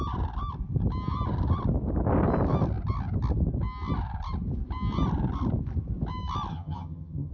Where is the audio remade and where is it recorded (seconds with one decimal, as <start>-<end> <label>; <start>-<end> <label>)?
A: 0.0-6.5 recorded; 6.5-7.3 remade